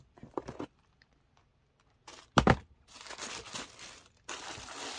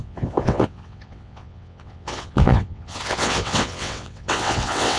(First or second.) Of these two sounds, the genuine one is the first